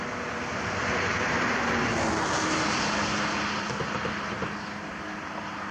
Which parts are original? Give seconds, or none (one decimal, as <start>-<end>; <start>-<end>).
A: 0.0-0.8; 1.9-5.7

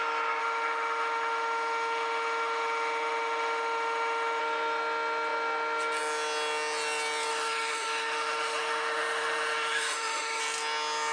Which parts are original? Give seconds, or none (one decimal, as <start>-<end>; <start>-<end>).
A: 0.0-0.4; 4.4-7.3; 10.4-11.1

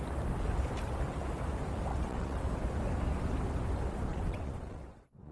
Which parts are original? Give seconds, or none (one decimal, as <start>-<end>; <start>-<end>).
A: 0.0-1.9; 2.4-4.1

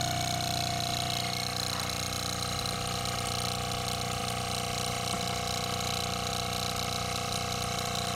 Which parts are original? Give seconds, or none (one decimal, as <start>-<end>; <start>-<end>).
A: 0.0-8.2

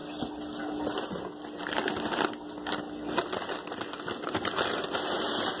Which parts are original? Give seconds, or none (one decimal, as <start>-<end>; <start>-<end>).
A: 0.0-5.6

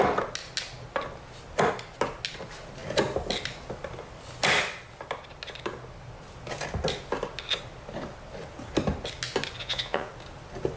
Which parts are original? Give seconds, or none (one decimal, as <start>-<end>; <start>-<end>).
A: 0.0-9.6; 10.1-10.8

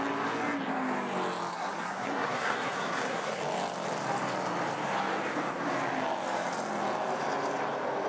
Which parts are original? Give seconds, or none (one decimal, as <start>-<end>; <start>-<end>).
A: 0.0-1.5; 3.4-8.1

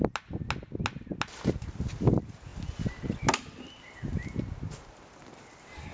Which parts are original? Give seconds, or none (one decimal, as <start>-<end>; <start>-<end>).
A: 0.0-5.9